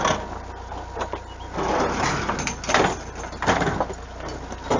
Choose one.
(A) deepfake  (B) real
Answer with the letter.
B